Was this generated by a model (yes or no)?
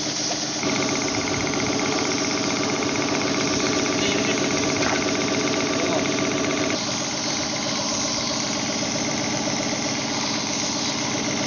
no